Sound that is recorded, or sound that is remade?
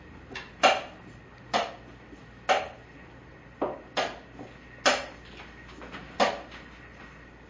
recorded